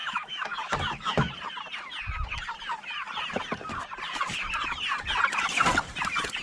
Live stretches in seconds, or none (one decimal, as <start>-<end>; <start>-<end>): 1.3-6.4